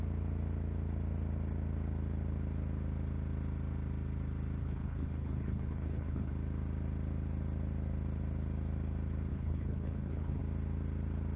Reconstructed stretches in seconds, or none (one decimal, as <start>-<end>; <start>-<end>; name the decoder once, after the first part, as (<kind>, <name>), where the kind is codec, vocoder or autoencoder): 4.6-6.3 (codec, HILCodec); 9.3-10.4